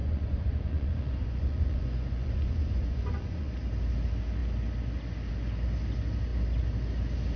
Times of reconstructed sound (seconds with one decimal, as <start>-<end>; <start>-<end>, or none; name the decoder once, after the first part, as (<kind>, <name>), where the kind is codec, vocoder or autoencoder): 0.0-3.5 (vocoder, Vocos)